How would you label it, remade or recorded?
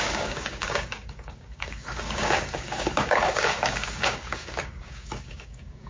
remade